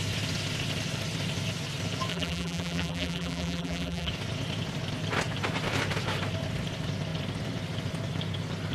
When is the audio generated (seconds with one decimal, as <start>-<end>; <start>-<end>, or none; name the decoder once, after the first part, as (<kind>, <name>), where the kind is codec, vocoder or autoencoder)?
2.1-4.1 (vocoder, BigVGAN v2)